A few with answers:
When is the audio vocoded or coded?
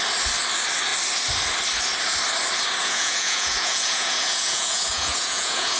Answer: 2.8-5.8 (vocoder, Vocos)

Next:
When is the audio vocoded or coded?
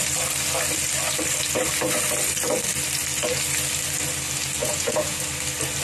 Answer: 4.6-5.2 (vocoder, Vocos)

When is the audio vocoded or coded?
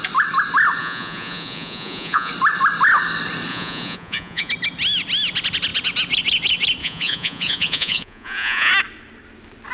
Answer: 0.8-2.3 (vocoder, Vocos); 3.5-4.5; 6.8-8.7